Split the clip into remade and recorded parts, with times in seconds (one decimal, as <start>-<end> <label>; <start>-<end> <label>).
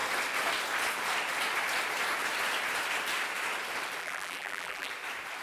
0.0-4.0 recorded; 4.0-4.9 remade; 4.9-5.4 recorded